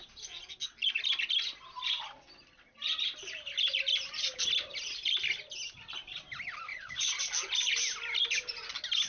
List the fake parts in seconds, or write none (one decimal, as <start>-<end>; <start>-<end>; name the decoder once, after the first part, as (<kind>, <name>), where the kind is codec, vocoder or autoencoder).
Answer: 6.7-7.2 (vocoder, Vocos)